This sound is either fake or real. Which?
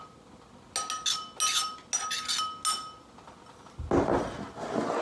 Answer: real